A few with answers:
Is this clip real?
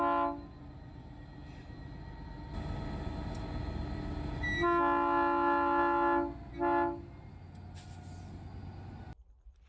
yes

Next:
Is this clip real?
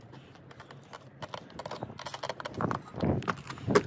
yes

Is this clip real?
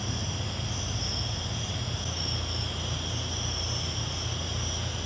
yes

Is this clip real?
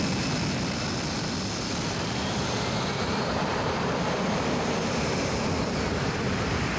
no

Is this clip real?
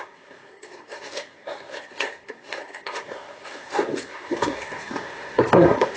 no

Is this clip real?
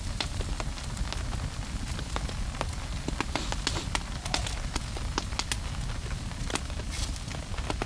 yes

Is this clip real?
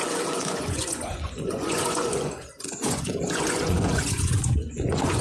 no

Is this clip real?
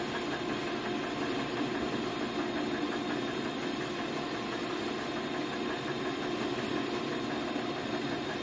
yes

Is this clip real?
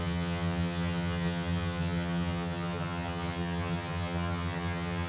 no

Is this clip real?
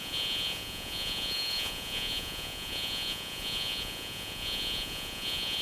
no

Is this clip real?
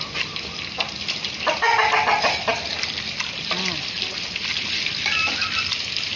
yes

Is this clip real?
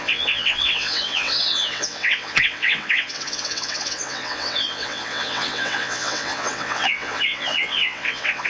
no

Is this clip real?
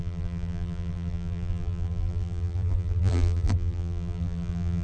no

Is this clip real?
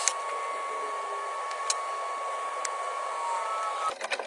yes